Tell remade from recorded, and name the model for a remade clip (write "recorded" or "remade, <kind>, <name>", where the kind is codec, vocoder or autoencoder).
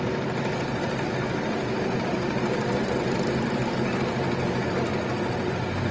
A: recorded